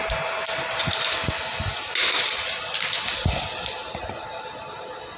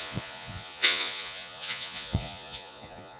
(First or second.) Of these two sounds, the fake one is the second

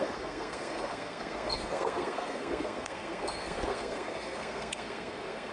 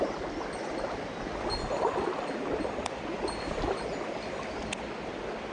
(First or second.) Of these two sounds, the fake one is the first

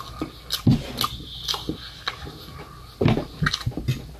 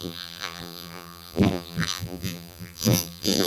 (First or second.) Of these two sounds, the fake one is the second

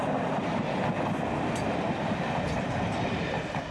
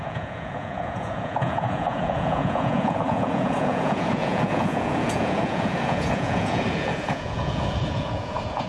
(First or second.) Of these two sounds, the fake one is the second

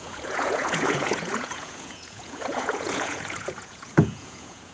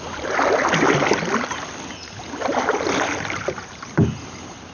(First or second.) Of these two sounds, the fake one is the first